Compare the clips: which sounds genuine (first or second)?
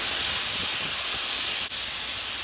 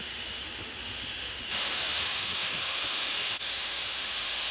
first